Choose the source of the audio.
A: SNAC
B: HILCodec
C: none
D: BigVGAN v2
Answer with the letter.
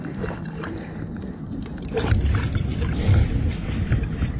C